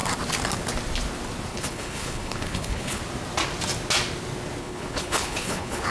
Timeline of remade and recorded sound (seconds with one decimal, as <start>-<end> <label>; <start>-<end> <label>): 0.0-1.5 recorded; 1.5-3.0 remade; 3.0-4.6 recorded; 4.6-5.9 remade